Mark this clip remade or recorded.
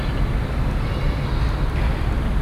recorded